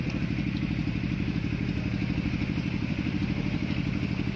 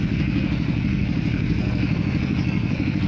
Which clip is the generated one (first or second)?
second